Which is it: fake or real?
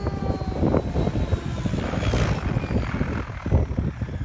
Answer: real